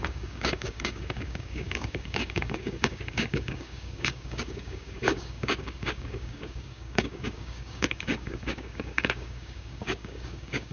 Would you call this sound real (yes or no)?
no